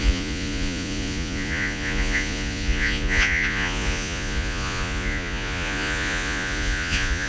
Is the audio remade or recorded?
remade